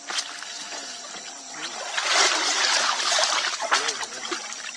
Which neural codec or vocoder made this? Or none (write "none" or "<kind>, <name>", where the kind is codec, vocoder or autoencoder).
none